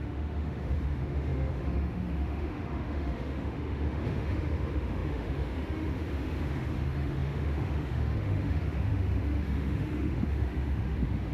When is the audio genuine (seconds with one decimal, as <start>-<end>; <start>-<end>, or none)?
none